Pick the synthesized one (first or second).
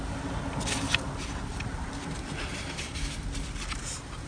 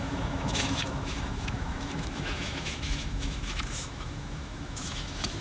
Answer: second